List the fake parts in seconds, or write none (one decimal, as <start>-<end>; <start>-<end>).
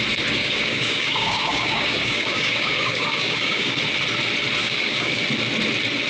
0.4-3.8; 4.6-5.2